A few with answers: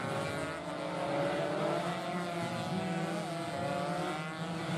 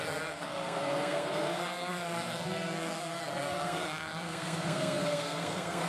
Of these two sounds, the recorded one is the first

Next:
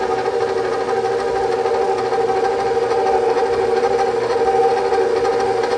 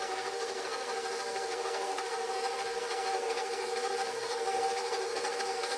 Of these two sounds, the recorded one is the first